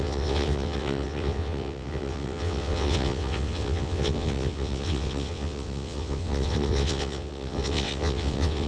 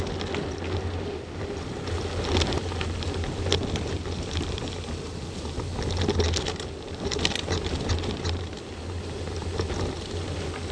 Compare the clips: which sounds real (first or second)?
second